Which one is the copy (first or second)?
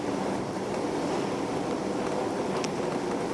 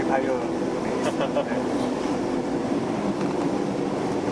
second